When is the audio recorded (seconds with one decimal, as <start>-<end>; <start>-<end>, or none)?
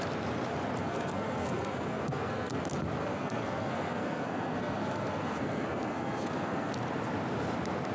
0.0-0.8; 2.6-3.0; 6.7-7.9